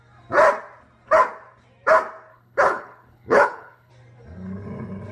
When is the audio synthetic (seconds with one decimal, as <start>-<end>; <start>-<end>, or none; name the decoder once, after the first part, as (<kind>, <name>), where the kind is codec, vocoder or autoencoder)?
2.3-3.9 (codec, HILCodec)